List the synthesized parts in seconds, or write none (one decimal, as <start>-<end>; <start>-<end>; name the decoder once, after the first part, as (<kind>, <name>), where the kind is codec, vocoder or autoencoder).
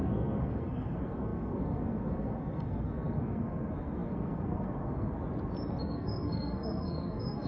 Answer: 0.0-5.2 (codec, SNAC); 5.8-7.5